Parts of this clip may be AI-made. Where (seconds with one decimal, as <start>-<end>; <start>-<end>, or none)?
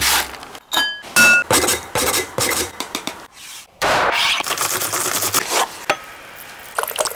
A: 1.7-5.3